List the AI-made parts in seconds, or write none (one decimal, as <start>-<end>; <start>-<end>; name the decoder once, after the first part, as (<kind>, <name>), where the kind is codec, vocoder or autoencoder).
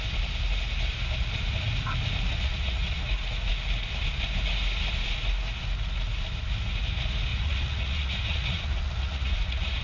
2.3-3.1 (vocoder, Vocos); 7.3-9.8